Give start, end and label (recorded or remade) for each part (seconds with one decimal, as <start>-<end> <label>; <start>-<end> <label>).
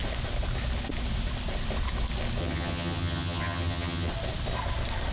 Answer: 0.0-2.4 recorded; 2.4-4.1 remade; 4.1-5.1 recorded